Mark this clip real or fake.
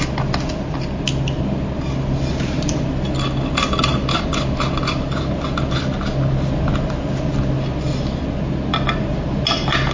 real